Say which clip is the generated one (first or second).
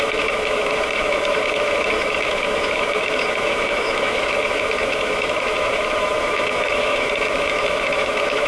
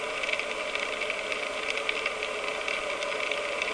first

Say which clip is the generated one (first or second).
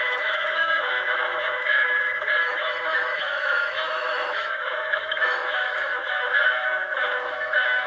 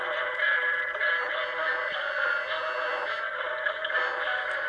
first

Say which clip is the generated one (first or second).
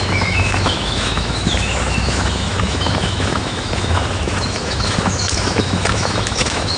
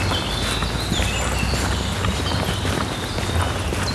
first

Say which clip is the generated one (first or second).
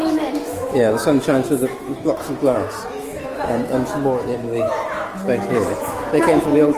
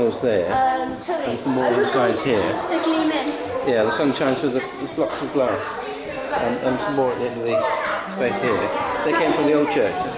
first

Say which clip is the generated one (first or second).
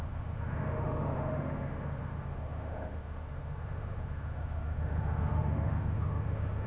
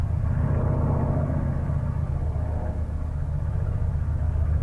first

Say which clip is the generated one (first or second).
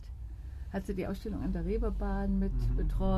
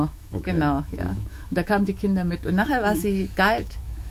second